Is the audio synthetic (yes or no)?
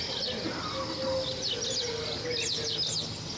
no